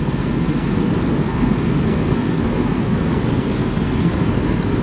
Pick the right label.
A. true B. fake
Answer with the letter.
B